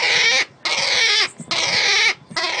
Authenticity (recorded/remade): recorded